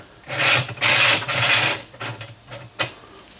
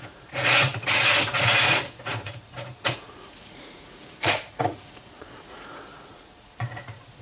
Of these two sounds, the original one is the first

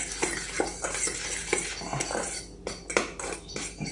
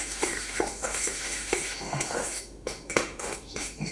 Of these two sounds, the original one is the first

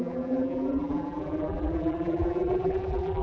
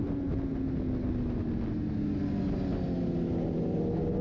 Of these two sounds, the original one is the second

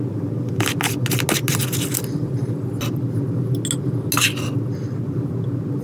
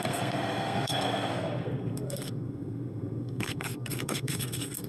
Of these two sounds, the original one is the first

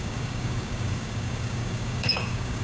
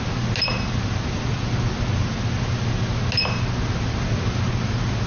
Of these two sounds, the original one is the second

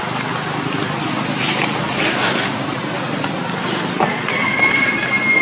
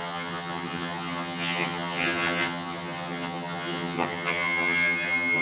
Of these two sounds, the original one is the first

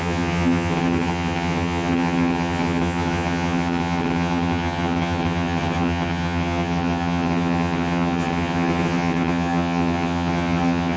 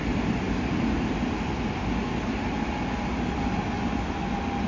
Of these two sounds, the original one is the second